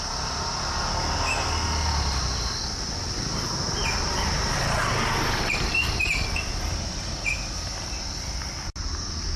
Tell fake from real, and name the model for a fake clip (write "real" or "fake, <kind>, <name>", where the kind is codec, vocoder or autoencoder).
real